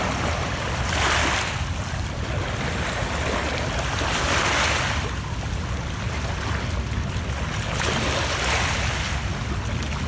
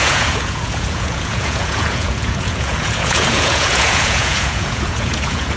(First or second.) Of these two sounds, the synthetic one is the second